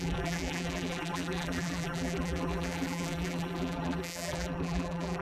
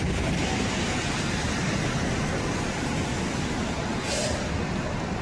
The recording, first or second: second